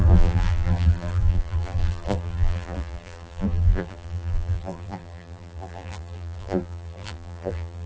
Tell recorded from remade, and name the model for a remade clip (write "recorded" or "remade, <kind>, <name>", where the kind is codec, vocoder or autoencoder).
remade, vocoder, BigVGAN v2